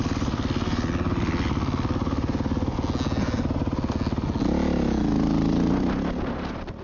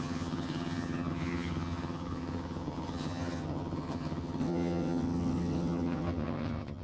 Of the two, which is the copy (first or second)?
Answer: second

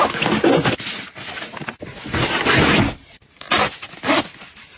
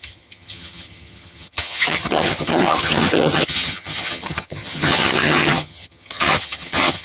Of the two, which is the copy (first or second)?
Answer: second